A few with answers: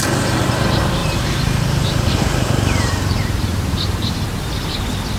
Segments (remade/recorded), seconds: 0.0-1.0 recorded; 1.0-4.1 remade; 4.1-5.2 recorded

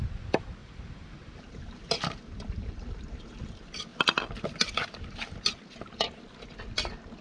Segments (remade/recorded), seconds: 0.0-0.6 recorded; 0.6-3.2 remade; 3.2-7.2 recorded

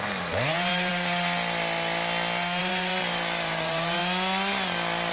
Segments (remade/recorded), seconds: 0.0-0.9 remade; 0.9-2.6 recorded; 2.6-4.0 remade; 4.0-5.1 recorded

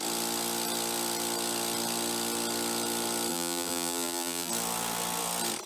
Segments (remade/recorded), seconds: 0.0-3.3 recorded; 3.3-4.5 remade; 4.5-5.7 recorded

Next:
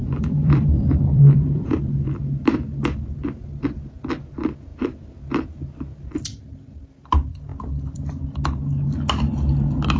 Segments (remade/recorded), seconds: 0.0-2.2 remade; 2.2-7.5 recorded; 7.5-8.1 remade; 8.1-10.0 recorded

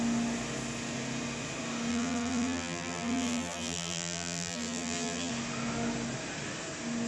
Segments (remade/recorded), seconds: 0.0-1.9 recorded; 1.9-5.3 remade; 5.3-7.1 recorded

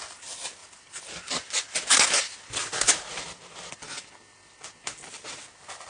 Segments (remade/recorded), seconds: 0.0-0.6 recorded; 0.6-3.7 remade; 3.7-5.9 recorded